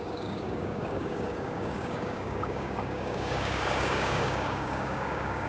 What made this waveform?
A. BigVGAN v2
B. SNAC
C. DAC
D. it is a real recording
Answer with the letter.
C